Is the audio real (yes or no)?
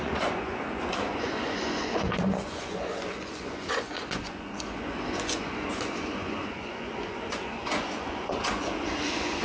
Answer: no